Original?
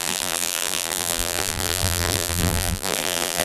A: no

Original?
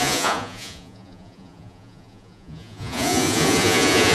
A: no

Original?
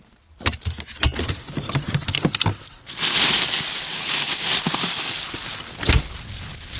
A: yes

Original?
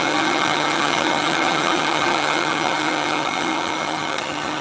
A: no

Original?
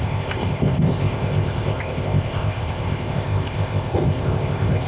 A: no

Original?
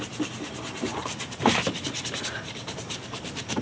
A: no